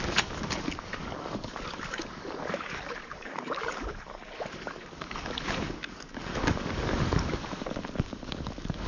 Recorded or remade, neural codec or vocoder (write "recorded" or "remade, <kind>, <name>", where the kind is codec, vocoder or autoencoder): remade, codec, DAC